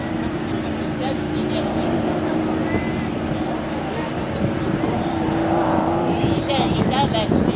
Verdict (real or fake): real